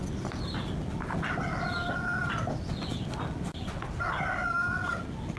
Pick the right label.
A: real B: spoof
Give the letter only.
A